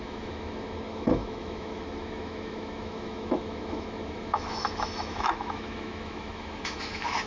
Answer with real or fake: fake